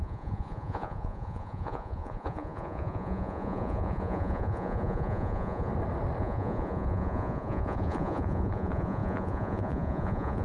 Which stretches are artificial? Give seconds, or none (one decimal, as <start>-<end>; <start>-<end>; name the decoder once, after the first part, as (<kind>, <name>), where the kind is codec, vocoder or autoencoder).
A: 0.0-5.7 (vocoder, Vocos); 6.2-10.4